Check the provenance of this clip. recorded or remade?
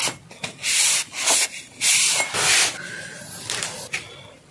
recorded